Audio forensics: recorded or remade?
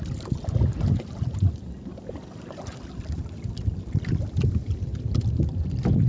recorded